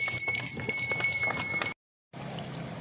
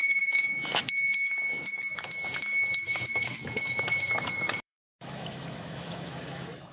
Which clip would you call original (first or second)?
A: first